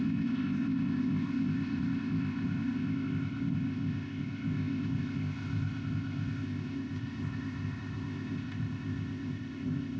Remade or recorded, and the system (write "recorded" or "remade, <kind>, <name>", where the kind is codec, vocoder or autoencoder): remade, codec, ZipCodec